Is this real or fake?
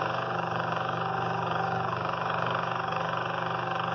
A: fake